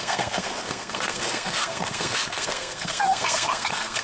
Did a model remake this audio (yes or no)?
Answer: yes